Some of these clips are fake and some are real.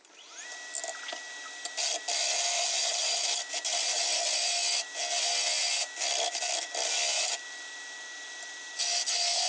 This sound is real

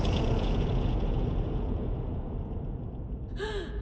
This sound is fake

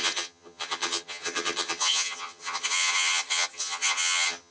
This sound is fake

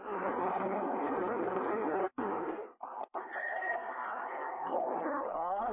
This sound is fake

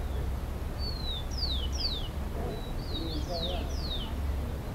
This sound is real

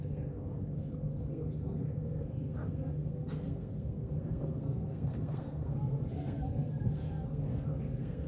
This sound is fake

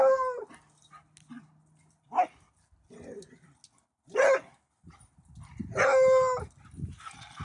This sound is real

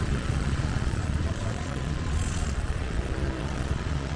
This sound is fake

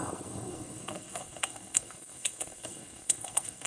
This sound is fake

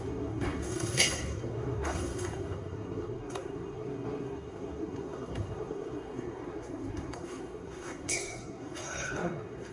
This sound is fake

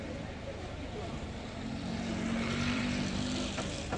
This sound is fake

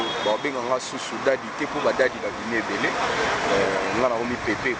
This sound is real